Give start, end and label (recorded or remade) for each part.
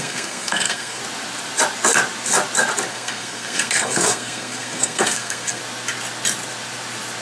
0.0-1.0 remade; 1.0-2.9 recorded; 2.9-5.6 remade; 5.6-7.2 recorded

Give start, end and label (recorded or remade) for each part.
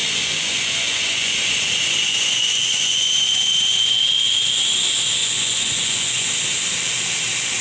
0.0-4.6 remade; 4.6-5.2 recorded; 5.2-6.3 remade; 6.3-7.6 recorded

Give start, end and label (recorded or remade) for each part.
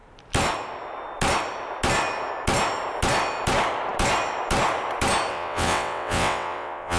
0.0-5.3 recorded; 5.3-7.0 remade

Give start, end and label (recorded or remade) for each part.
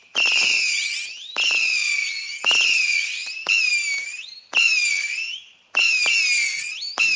0.0-7.2 recorded